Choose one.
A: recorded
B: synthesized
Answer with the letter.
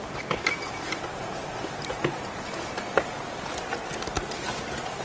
A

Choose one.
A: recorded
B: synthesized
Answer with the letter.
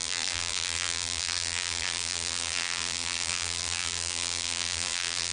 B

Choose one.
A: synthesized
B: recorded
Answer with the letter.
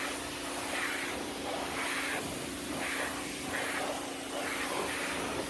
B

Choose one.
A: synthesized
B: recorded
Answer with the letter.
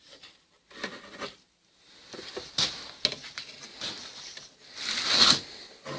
B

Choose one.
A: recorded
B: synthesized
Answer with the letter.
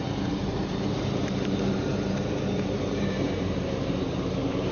B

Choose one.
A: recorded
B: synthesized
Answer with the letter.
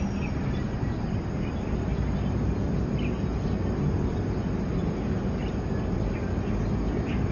A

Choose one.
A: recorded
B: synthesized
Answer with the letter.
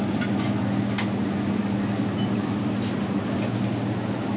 A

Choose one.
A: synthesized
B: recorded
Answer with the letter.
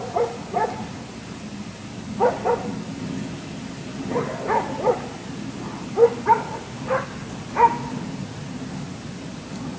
B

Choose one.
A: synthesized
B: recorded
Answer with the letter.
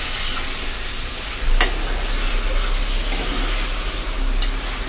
B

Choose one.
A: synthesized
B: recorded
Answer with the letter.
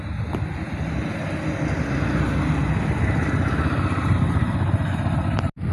B